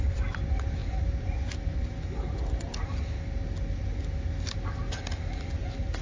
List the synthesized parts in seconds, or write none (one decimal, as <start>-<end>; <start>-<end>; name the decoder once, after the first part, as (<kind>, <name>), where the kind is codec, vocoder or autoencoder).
none